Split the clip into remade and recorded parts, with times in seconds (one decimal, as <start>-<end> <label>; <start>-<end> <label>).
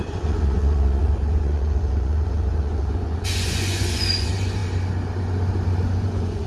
0.0-4.6 remade; 4.6-6.0 recorded; 6.0-6.5 remade